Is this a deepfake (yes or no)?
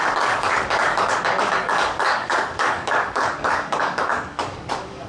yes